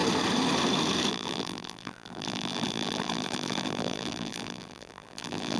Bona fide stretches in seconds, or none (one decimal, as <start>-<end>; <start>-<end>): 0.0-1.1